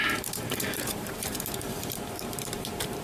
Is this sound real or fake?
fake